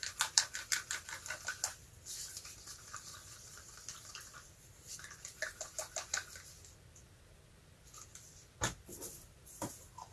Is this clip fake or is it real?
fake